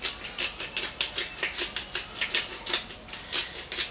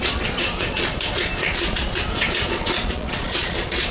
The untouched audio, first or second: first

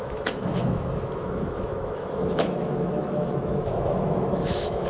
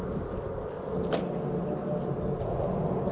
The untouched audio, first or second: second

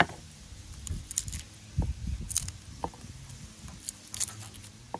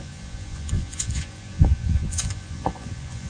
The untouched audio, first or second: first